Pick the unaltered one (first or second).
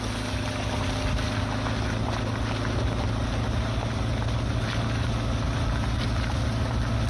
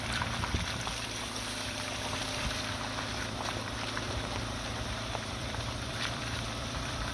first